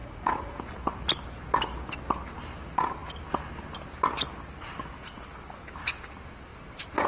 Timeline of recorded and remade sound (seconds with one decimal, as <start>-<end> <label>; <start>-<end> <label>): 0.0-0.6 remade; 0.6-7.1 recorded

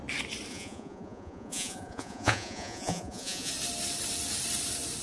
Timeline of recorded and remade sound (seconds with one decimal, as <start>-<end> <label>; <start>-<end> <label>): 0.0-0.5 recorded; 0.5-3.5 remade; 3.5-5.0 recorded

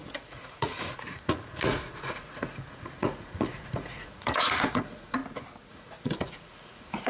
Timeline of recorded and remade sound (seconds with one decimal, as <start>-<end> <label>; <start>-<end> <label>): 0.0-5.2 remade; 5.2-5.7 recorded; 5.7-7.1 remade

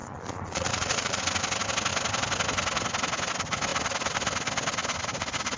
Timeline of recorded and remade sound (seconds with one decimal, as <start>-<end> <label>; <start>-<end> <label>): 0.0-1.2 remade; 1.2-5.6 recorded

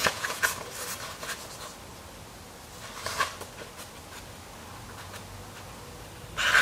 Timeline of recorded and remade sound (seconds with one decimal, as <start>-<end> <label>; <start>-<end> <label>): 0.0-0.5 remade; 0.5-6.6 recorded

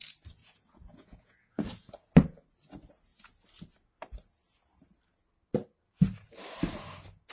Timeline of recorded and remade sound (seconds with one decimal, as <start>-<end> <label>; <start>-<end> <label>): 0.0-0.4 recorded; 0.4-1.9 remade; 1.9-7.3 recorded